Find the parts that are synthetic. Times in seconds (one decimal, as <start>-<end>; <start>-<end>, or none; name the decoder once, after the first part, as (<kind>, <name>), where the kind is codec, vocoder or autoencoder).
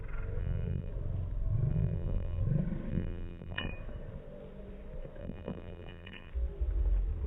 0.4-0.9 (vocoder, BigVGAN v2); 1.7-2.4; 2.9-3.7; 5.2-6.3